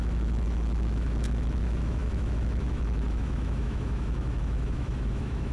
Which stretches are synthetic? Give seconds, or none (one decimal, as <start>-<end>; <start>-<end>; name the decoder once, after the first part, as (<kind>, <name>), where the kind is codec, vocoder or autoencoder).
0.0-5.5 (autoencoder, DAC-VAE)